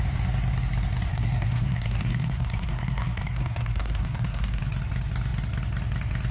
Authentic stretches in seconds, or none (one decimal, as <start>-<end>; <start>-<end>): 0.0-1.1; 4.6-6.3